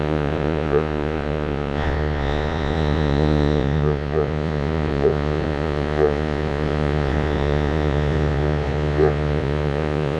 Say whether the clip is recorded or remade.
remade